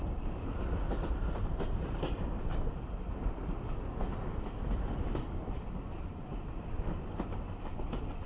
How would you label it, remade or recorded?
recorded